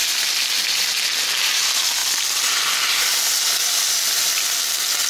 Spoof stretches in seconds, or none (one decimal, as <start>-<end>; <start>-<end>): none